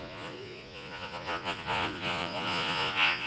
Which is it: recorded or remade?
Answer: remade